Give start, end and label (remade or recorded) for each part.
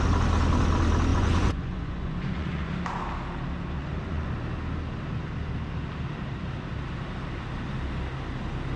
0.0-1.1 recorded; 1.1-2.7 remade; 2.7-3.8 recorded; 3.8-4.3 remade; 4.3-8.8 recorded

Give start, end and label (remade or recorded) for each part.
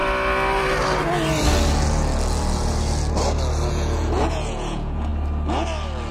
0.0-3.7 recorded; 3.7-5.1 remade; 5.1-6.1 recorded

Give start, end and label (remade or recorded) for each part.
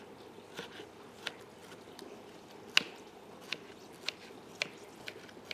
0.0-5.5 recorded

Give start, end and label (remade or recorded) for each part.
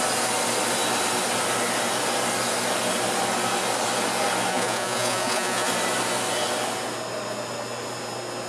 0.0-4.5 recorded; 4.5-5.7 remade; 5.7-8.5 recorded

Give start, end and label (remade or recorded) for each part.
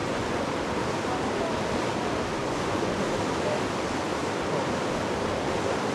0.0-0.5 remade; 0.5-2.4 recorded; 2.4-3.0 remade; 3.0-5.9 recorded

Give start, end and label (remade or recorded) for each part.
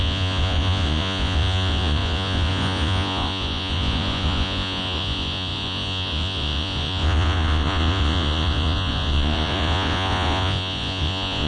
0.0-11.5 remade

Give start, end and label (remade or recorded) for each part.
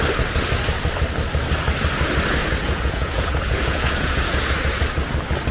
0.0-2.4 recorded; 2.4-4.5 remade; 4.5-5.5 recorded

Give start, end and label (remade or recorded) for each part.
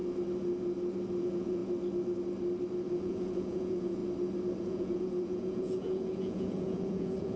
0.0-1.2 recorded; 1.2-1.6 remade; 1.6-2.9 recorded; 2.9-4.0 remade; 4.0-4.6 recorded; 4.6-7.4 remade